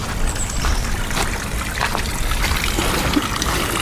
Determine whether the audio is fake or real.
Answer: real